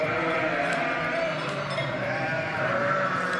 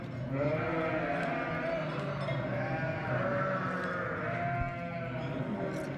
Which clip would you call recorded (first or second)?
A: second